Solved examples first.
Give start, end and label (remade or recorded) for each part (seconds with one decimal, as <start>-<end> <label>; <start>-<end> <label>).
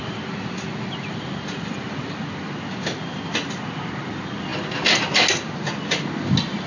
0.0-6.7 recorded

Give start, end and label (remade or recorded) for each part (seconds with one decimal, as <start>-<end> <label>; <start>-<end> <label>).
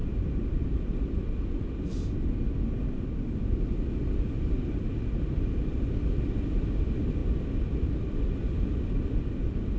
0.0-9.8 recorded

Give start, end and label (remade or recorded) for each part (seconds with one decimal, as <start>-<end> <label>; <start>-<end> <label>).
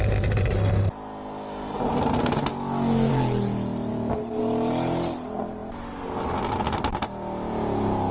0.0-2.5 recorded; 2.5-3.1 remade; 3.1-3.9 recorded; 3.9-4.4 remade; 4.4-8.1 recorded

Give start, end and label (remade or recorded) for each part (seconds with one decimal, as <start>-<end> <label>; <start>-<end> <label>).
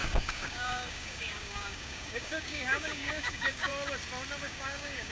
0.0-3.7 remade; 3.7-4.4 recorded; 4.4-5.1 remade